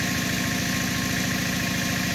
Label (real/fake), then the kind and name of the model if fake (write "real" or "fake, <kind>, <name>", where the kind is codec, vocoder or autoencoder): real